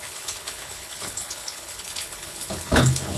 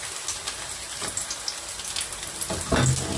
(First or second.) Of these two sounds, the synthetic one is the first